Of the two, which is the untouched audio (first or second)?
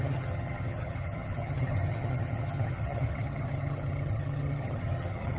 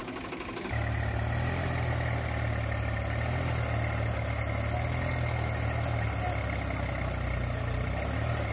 second